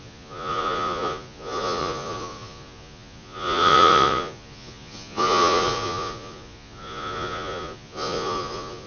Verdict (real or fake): fake